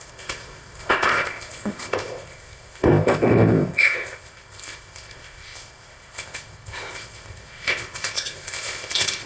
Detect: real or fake fake